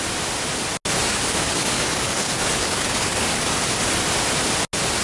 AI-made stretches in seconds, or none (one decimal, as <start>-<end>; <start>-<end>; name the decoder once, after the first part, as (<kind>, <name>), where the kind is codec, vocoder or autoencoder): 1.1-3.8 (codec, DAC)